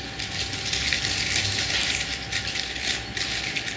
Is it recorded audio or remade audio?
recorded